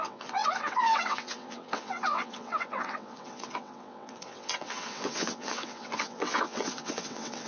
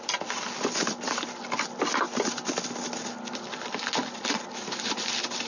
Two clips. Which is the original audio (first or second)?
second